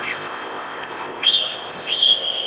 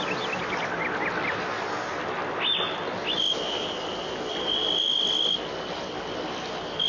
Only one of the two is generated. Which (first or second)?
first